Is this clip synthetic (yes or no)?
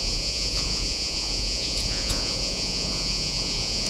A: yes